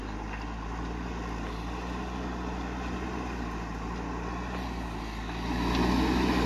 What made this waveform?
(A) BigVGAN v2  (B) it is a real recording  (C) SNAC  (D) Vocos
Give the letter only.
B